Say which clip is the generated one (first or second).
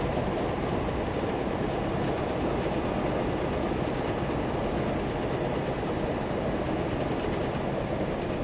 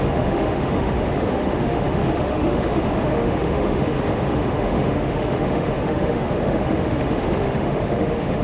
second